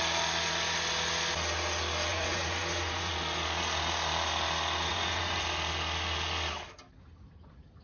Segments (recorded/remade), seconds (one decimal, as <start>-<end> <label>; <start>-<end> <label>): 0.0-2.1 recorded; 2.1-3.1 remade; 3.1-4.9 recorded; 4.9-5.4 remade; 5.4-7.8 recorded

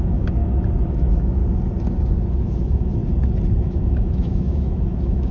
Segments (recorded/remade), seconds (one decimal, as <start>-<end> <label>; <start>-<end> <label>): 0.0-0.4 remade; 0.4-0.9 recorded; 0.9-1.4 remade; 1.4-2.4 recorded; 2.4-3.0 remade; 3.0-3.6 recorded; 3.6-5.3 remade

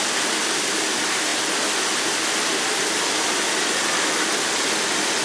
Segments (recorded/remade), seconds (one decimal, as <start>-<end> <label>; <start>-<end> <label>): 0.0-5.2 recorded

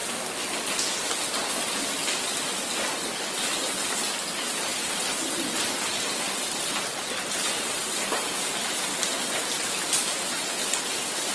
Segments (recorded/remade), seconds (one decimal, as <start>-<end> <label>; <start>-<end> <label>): 0.0-11.3 recorded

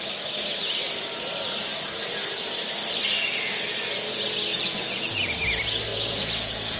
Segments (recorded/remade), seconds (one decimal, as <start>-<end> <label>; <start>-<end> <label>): 0.0-4.5 recorded; 4.5-5.2 remade; 5.2-5.9 recorded; 5.9-6.8 remade

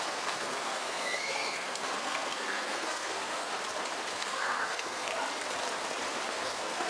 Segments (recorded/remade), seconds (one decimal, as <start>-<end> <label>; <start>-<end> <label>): 0.0-3.5 remade; 3.5-4.1 recorded; 4.1-5.1 remade; 5.1-6.3 recorded; 6.3-6.9 remade

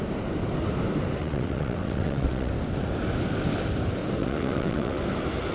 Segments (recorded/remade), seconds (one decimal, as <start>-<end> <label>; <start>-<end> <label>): 0.0-1.2 recorded; 1.2-2.5 remade; 2.5-4.2 recorded; 4.2-5.0 remade; 5.0-5.5 recorded

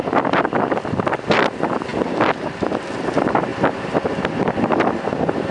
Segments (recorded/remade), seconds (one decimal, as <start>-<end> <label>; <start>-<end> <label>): 0.0-5.5 recorded